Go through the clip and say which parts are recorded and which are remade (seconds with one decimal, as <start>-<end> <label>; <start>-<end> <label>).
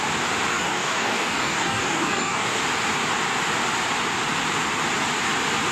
0.0-0.5 recorded; 0.5-2.6 remade; 2.6-5.7 recorded